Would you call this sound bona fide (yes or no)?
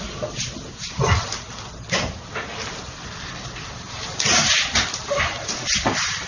yes